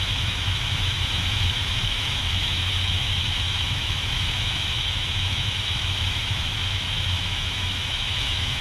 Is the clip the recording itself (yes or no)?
no